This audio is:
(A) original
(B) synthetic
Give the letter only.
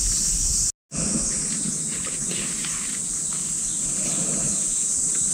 A